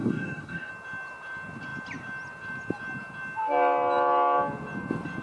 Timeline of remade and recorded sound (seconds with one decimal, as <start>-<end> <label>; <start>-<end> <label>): 0.0-0.7 remade; 0.7-5.2 recorded